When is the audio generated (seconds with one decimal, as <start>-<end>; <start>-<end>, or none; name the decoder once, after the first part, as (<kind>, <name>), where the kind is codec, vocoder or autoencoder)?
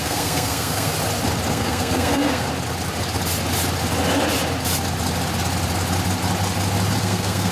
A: 0.0-0.9 (codec, SNAC); 1.5-2.5; 7.0-7.5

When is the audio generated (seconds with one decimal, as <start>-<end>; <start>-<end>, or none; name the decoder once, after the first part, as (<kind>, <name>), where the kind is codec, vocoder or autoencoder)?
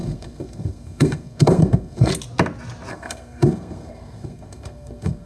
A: 0.0-2.1 (codec, SNAC); 2.9-5.3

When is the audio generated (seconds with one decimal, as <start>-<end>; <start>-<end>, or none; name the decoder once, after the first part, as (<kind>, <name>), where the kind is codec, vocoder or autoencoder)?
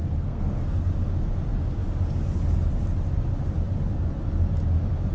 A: 0.0-0.9 (codec, SNAC)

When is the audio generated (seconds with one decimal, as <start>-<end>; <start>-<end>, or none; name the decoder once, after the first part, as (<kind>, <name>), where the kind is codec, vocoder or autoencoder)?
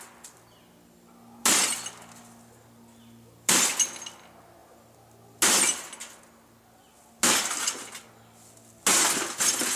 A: none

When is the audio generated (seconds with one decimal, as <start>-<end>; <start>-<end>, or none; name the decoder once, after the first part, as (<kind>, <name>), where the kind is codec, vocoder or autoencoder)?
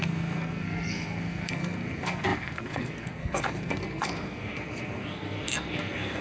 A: 0.0-6.2 (codec, SNAC)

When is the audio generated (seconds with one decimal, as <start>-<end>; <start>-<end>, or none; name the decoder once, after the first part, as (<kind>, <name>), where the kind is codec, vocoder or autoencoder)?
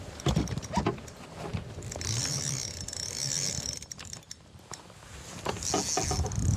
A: none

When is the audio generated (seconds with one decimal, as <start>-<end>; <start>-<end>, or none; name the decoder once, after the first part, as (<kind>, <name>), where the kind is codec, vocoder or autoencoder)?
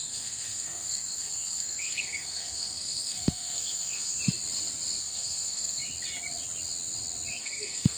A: 0.0-4.2 (codec, SNAC); 5.0-5.8; 7.4-8.0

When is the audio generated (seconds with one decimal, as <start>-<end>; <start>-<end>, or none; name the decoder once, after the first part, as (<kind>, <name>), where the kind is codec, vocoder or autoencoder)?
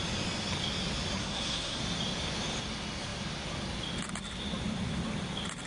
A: 1.2-1.8 (codec, SNAC)